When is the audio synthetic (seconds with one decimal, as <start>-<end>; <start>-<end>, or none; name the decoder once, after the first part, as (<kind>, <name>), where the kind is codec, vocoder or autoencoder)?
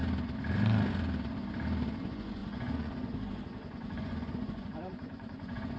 2.0-5.8 (vocoder, Vocos)